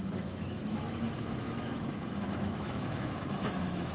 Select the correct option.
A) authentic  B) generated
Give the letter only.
B